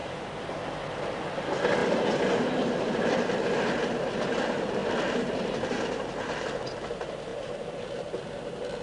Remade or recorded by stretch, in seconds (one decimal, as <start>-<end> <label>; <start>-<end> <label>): 0.0-0.5 remade; 0.5-1.8 recorded; 1.8-3.1 remade; 3.1-4.8 recorded; 4.8-6.7 remade; 6.7-7.3 recorded; 7.3-7.8 remade; 7.8-8.8 recorded